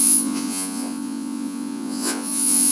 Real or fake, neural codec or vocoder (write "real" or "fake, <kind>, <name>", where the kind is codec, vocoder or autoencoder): fake, vocoder, Vocos